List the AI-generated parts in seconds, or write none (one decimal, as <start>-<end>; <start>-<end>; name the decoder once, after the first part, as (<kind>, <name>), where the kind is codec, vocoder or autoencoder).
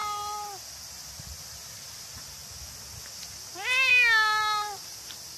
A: 1.4-2.4 (vocoder, BigVGAN v2); 4.7-5.4